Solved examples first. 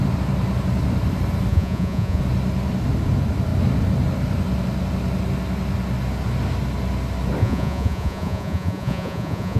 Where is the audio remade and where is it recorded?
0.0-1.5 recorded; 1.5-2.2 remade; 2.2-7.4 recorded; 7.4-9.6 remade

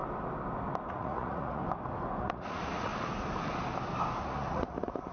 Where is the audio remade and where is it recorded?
0.0-0.9 recorded; 0.9-1.6 remade; 1.6-2.2 recorded; 2.2-2.9 remade; 2.9-4.2 recorded; 4.2-5.1 remade